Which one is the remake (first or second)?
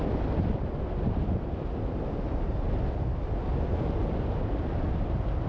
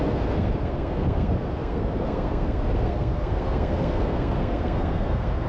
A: second